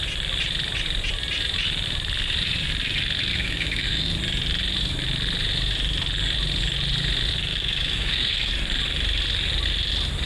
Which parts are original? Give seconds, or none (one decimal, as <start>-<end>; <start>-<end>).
0.0-3.3; 4.1-7.5; 8.5-10.3